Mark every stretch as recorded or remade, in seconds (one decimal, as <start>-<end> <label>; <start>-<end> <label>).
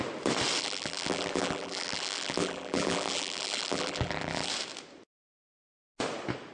0.0-0.6 recorded; 0.6-4.5 remade; 4.5-6.5 recorded